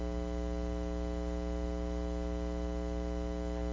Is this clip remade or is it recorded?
recorded